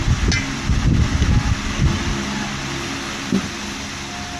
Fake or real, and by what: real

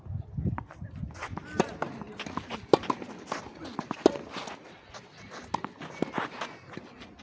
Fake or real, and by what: real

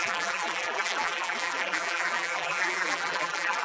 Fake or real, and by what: fake, vocoder, BigVGAN v2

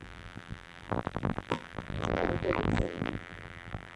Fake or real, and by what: fake, vocoder, BigVGAN v2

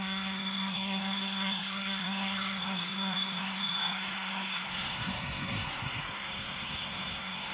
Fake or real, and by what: fake, codec, SNAC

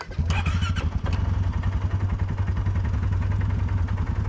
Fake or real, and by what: real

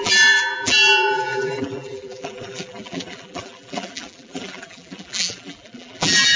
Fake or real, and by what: fake, vocoder, BigVGAN v2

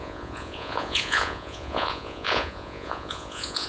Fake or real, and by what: fake, vocoder, Vocos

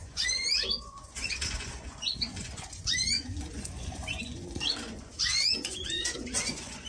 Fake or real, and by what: fake, vocoder, Vocos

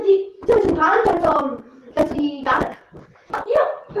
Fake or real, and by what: real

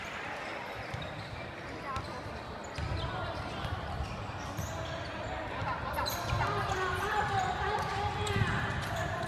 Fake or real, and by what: real